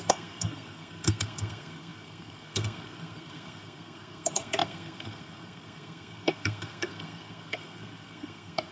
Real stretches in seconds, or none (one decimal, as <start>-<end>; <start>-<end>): none